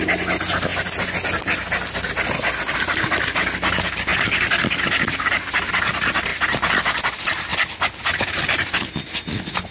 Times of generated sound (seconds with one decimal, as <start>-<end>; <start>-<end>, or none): none